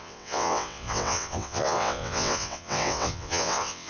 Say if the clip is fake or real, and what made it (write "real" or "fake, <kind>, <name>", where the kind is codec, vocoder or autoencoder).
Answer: fake, vocoder, WaveNeXt